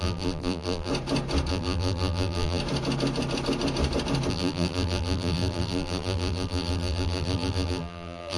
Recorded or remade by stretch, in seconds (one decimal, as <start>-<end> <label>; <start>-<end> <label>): 0.0-0.9 remade; 0.9-1.5 recorded; 1.5-2.6 remade; 2.6-4.3 recorded; 4.3-8.4 remade